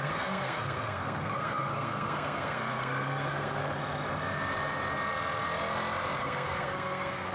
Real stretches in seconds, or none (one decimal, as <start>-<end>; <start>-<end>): 3.6-6.2